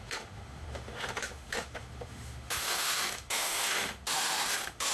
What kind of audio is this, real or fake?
fake